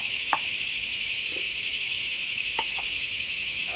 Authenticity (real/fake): fake